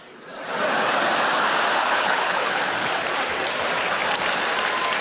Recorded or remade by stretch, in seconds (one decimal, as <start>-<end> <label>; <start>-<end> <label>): 0.0-1.8 recorded; 1.8-2.6 remade; 2.6-5.0 recorded

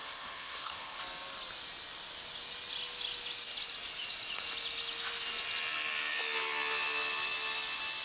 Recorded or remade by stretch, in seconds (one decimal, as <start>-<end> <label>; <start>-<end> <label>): 0.0-1.0 remade; 1.0-8.0 recorded

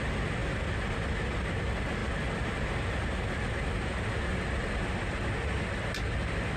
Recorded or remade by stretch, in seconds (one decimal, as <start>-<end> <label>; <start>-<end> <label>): 0.0-6.6 recorded

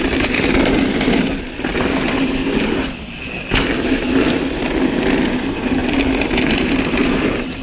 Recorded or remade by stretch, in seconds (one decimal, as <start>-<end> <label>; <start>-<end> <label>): 0.0-7.6 recorded

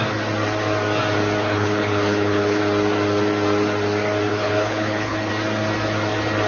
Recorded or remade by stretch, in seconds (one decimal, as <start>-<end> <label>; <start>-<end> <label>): 0.0-1.4 recorded; 1.4-2.6 remade; 2.6-4.3 recorded; 4.3-5.3 remade; 5.3-6.5 recorded

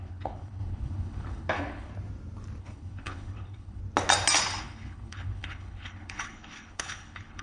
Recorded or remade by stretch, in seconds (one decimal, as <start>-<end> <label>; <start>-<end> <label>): 0.0-1.9 remade; 1.9-2.6 recorded; 2.6-3.8 remade; 3.8-4.6 recorded; 4.6-7.4 remade